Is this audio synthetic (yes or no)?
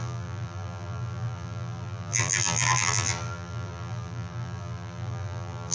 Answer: yes